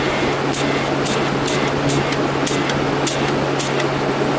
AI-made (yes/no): no